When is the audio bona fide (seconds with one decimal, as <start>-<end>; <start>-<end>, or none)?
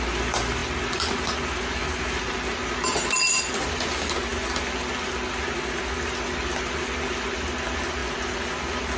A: 0.0-9.0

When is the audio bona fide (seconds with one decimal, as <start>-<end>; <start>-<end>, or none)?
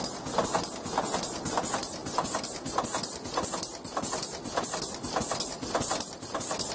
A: 0.0-6.7